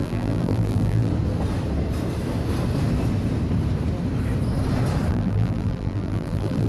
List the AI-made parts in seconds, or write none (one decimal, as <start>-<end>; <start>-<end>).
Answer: 0.0-1.1; 5.1-6.7